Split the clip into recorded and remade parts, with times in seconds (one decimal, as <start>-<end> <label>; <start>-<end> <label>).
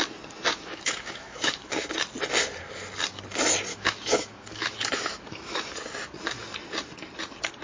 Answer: 0.0-0.5 recorded; 0.5-1.9 remade; 1.9-3.7 recorded; 3.7-5.6 remade; 5.6-7.6 recorded